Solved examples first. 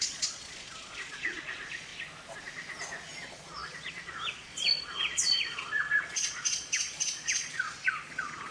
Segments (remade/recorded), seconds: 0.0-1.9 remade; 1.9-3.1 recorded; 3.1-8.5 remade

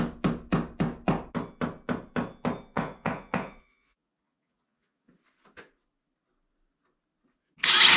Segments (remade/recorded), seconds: 0.0-2.7 recorded; 2.7-5.1 remade; 5.1-8.0 recorded

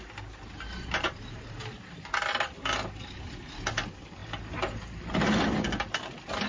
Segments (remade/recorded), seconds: 0.0-6.5 recorded